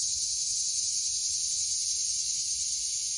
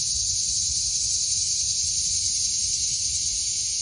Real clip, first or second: first